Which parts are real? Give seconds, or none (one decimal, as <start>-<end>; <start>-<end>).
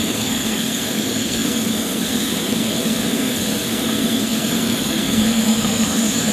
none